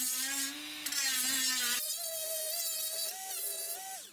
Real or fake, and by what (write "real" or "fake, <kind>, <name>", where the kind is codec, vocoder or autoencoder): real